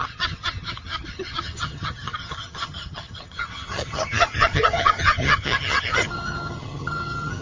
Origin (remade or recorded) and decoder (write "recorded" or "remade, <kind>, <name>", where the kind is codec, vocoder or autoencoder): remade, vocoder, HiFi-GAN